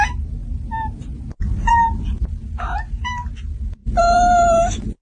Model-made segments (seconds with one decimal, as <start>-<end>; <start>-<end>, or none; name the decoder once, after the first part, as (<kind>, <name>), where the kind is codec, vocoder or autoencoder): 3.8-5.0 (vocoder, BigVGAN v2)